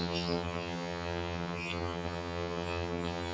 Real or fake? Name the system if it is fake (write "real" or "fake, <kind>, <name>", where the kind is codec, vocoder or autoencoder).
fake, vocoder, HiFi-GAN